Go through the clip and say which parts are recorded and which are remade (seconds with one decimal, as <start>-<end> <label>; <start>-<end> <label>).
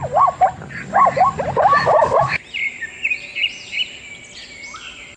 0.0-1.7 recorded; 1.7-2.4 remade; 2.4-5.2 recorded